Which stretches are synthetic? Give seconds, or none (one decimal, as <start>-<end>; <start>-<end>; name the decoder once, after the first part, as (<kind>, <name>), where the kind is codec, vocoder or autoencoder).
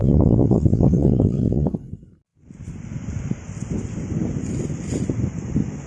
0.0-1.9 (vocoder, WaveNeXt)